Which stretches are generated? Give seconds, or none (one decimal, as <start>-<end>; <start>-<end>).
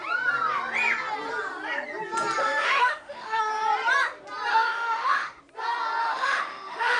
2.4-3.4; 4.5-5.4; 6.0-7.0